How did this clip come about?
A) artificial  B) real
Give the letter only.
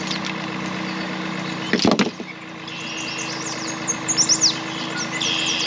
B